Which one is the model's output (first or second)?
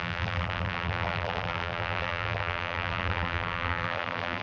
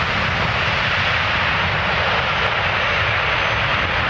first